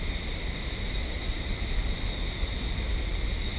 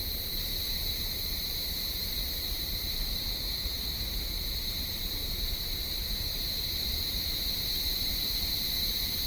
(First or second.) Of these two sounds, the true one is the first